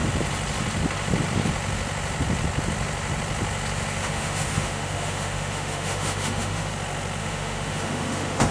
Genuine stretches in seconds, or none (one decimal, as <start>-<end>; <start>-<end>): 0.0-4.0; 6.7-7.2